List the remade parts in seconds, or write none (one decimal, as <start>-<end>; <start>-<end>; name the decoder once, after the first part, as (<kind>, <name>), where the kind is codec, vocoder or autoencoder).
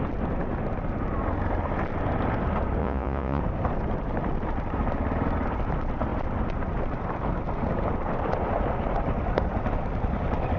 2.8-3.4 (vocoder, Vocos)